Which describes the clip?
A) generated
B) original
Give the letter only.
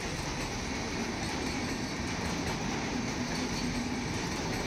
B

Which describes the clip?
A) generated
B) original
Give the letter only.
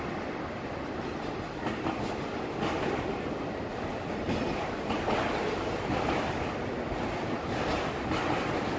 B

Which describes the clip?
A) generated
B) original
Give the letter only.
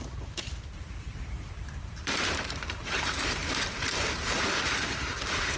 A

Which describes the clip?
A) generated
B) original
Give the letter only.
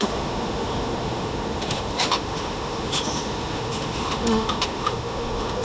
A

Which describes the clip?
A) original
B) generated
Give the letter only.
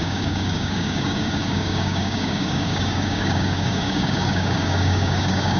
B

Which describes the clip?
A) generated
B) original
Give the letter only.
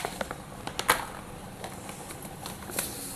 B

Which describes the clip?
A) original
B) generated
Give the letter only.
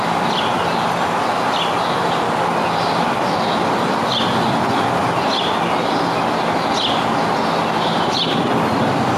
A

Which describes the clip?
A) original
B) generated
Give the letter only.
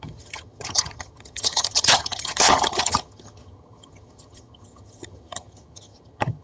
B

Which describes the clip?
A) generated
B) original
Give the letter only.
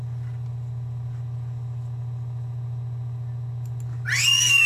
B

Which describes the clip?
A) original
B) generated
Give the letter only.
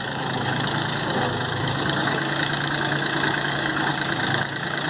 B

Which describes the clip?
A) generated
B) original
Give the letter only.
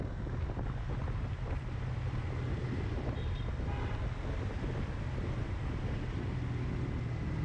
B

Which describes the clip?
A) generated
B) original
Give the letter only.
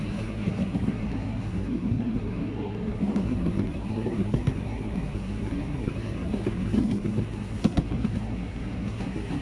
A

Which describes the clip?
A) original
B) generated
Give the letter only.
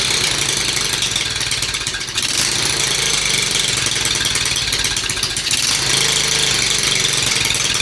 A